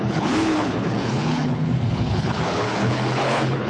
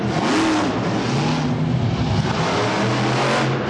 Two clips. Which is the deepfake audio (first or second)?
first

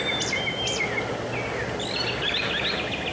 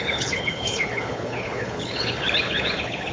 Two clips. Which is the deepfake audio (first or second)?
second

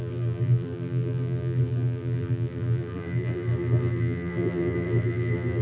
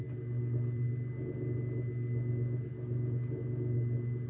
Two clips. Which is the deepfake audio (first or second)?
first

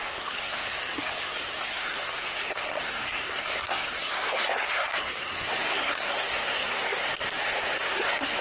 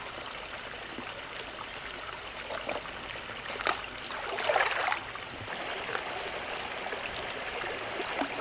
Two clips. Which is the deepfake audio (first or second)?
first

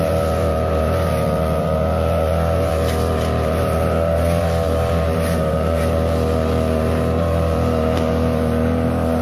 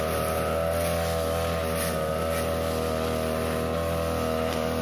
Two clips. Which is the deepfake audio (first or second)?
first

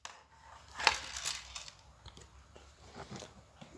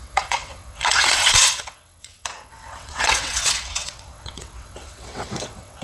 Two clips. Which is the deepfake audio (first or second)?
second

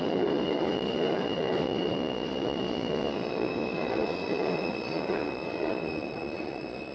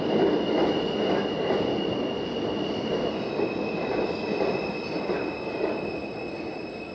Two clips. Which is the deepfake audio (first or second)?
first